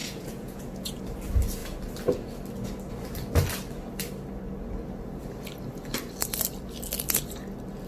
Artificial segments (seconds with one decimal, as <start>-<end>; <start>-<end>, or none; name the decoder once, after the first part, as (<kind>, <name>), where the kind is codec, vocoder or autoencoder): 0.0-1.0 (vocoder, Vocos)